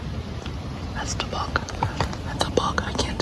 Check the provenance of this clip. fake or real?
real